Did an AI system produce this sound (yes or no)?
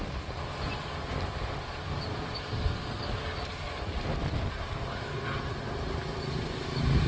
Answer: no